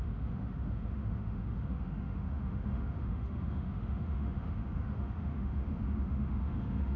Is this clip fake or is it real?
fake